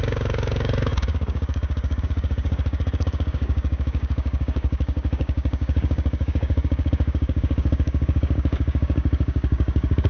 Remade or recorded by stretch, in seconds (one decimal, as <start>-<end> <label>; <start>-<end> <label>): 0.0-10.1 remade

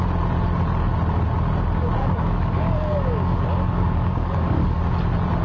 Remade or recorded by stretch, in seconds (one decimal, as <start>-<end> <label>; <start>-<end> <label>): 0.0-2.0 recorded; 2.0-4.8 remade; 4.8-5.4 recorded

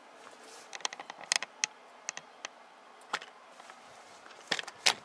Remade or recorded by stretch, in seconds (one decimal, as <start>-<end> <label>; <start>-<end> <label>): 0.0-5.0 recorded

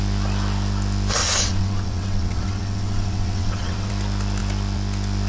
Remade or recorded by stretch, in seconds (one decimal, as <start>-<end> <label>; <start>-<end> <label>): 0.0-1.2 recorded; 1.2-3.9 remade; 3.9-5.3 recorded

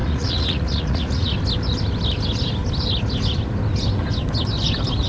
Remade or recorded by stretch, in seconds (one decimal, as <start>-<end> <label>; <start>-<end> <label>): 0.0-1.3 remade; 1.3-5.1 recorded

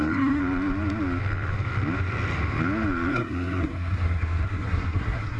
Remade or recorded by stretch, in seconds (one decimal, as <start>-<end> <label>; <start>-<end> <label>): 0.0-0.4 remade; 0.4-3.1 recorded; 3.1-5.4 remade

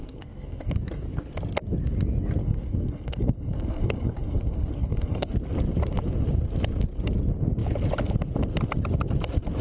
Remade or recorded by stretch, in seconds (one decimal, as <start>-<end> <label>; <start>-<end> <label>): 0.0-0.7 remade; 0.7-2.4 recorded; 2.4-5.3 remade; 5.3-9.6 recorded

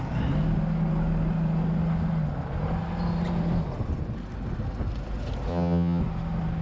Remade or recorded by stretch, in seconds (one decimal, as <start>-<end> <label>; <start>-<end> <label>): 0.0-5.5 recorded; 5.5-6.0 remade; 6.0-6.6 recorded